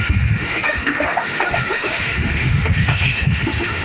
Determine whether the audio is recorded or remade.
remade